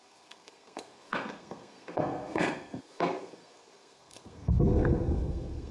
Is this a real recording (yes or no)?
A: no